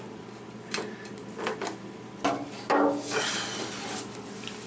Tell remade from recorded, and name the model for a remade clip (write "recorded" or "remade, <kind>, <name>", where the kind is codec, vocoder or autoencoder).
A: recorded